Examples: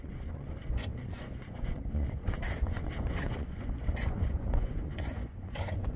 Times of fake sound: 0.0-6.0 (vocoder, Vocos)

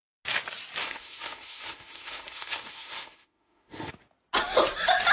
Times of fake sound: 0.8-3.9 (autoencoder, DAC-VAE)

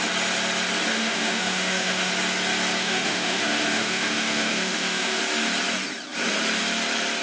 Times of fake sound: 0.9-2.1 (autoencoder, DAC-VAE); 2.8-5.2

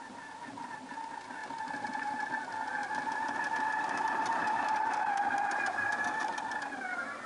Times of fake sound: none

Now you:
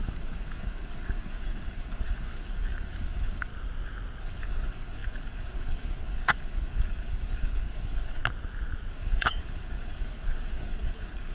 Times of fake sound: 0.0-3.5 (codec, DAC); 4.2-8.2; 8.9-11.3

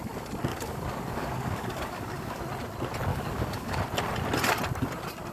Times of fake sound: 0.5-2.4 (codec, DAC); 3.1-3.8